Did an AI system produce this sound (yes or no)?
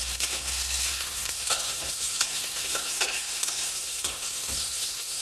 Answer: yes